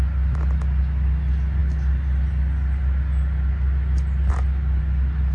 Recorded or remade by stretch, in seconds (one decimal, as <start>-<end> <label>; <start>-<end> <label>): 0.0-5.3 recorded